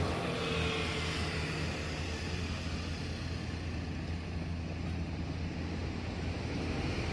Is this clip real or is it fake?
real